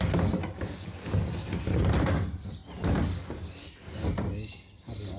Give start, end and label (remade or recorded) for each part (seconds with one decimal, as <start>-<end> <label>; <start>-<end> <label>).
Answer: 0.0-5.2 recorded